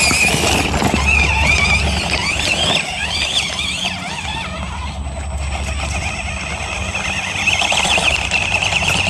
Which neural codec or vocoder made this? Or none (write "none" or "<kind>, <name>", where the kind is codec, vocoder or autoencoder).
none